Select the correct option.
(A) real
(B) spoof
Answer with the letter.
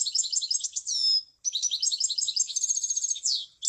A